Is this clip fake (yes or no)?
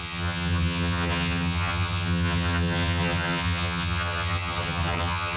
yes